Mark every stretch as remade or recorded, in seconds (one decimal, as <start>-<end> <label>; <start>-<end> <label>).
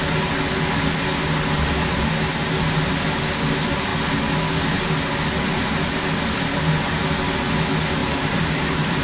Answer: 0.0-8.0 recorded; 8.0-9.0 remade